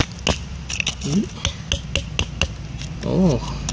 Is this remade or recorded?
recorded